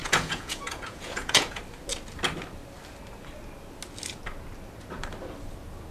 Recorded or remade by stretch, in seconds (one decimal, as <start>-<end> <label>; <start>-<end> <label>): 0.0-1.6 remade; 1.6-5.9 recorded